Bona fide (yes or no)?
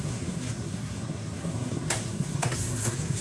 no